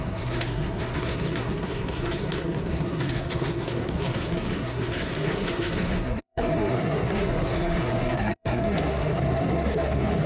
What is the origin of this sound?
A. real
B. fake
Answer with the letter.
B